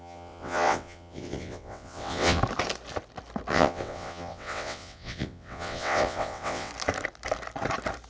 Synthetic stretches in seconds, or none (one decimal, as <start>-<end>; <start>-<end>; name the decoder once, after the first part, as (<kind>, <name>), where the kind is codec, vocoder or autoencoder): 0.0-2.4 (vocoder, WaveNeXt); 3.5-6.7